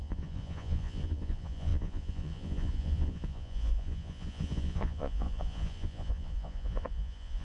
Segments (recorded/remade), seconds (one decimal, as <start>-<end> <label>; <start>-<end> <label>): 0.0-7.4 remade